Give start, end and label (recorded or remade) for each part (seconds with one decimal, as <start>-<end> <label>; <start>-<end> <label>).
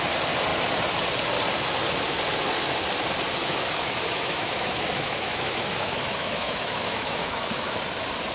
0.0-3.4 recorded; 3.4-7.8 remade; 7.8-8.3 recorded